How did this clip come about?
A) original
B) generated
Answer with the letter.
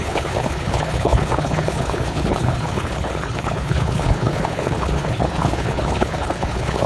B